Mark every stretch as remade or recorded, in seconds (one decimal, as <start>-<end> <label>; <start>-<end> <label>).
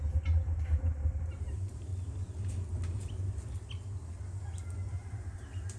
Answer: 0.0-1.9 remade; 1.9-4.9 recorded; 4.9-5.8 remade